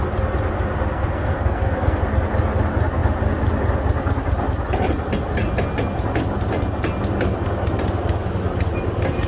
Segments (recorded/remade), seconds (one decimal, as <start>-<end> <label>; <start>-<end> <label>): 0.0-0.9 recorded; 0.9-2.0 remade; 2.0-9.3 recorded